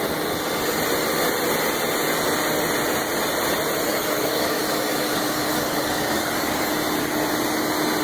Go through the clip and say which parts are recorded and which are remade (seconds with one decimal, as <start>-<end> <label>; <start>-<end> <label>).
0.0-3.9 recorded; 3.9-6.7 remade; 6.7-8.0 recorded